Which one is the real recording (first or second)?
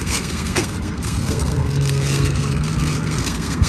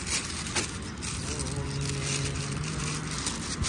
second